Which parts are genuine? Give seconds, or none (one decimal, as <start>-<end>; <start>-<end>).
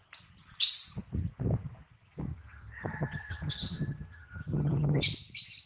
0.0-2.3; 5.0-5.7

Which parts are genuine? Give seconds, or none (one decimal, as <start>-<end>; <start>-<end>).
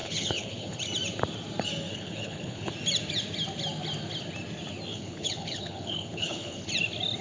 0.8-1.9; 2.7-4.9; 6.7-7.2